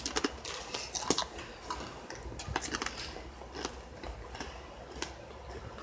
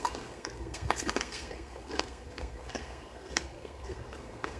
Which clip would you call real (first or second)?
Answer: first